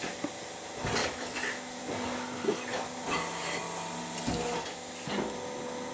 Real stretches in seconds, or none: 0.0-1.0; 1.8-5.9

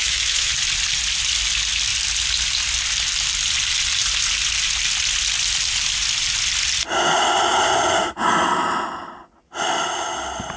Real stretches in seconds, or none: 0.5-10.6